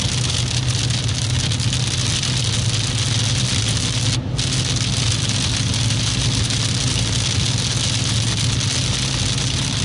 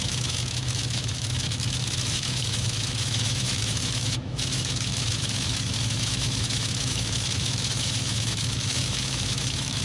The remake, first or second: second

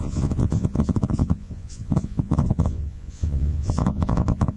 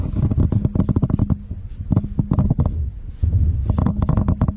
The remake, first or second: first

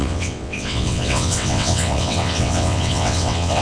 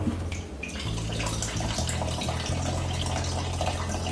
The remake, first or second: first